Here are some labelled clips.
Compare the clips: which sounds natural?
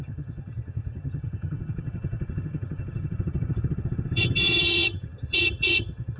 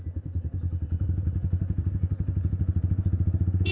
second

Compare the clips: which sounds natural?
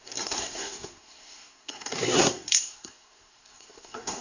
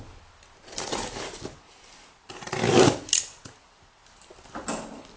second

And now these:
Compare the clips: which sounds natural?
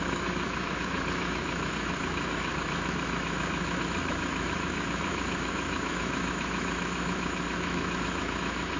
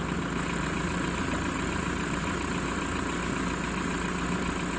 second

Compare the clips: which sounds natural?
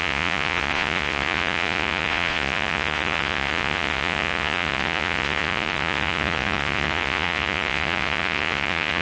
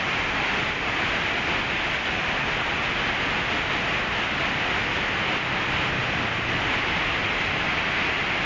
second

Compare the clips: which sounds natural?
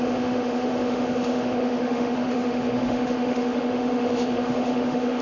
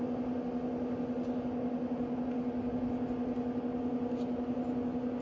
second